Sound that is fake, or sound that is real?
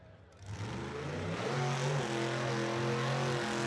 real